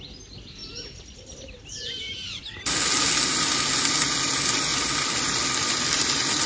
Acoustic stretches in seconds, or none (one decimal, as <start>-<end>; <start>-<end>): 0.0-0.6; 2.6-6.5